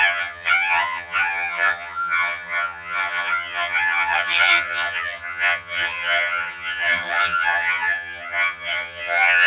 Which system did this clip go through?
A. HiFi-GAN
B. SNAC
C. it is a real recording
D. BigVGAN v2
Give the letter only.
A